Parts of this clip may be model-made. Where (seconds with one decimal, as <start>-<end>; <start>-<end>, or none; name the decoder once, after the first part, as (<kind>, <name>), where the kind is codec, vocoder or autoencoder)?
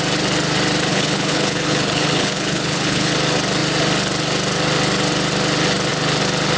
0.9-3.1 (codec, HILCodec)